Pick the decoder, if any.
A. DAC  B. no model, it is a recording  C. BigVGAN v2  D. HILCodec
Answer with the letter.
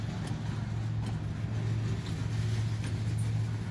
B